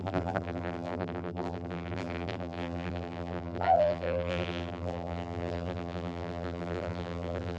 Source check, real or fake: fake